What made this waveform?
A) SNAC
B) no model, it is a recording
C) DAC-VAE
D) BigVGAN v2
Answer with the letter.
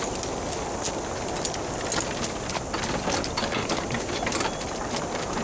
B